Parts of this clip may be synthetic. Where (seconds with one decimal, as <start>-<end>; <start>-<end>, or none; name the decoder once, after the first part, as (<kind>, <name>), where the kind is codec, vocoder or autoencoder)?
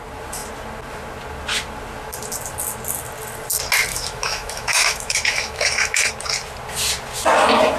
3.9-6.1 (autoencoder, DAC-VAE)